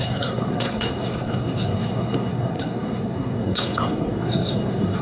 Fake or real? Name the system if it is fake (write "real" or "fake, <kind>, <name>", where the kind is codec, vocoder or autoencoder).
fake, codec, SNAC